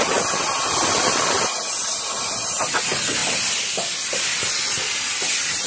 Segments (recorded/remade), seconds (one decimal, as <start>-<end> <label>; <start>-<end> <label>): 0.0-5.7 recorded